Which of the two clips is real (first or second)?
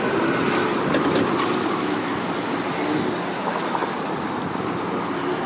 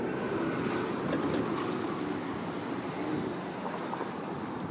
first